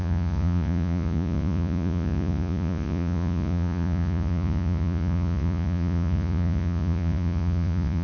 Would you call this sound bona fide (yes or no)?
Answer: no